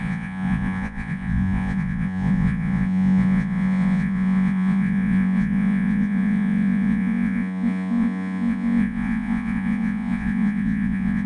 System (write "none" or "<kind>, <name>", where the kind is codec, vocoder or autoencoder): vocoder, Vocos